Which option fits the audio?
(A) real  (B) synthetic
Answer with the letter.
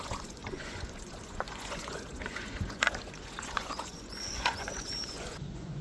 B